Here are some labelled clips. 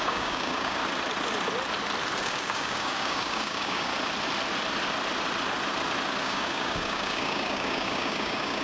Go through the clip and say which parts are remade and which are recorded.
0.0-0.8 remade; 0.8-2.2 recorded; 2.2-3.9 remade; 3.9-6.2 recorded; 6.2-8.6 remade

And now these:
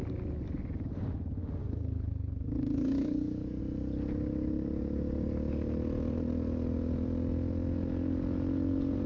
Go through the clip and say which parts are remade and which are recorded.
0.0-1.6 recorded; 1.6-3.6 remade; 3.6-9.1 recorded